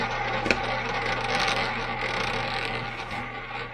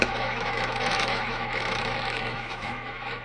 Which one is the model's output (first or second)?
second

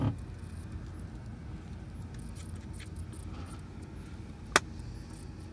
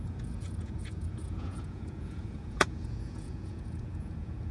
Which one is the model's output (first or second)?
second